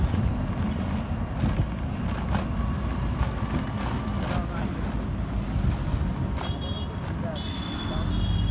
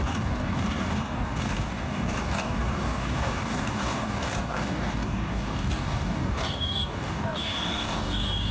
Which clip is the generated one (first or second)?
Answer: second